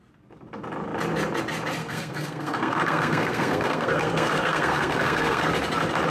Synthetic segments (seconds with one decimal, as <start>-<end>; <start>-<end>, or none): 1.8-5.5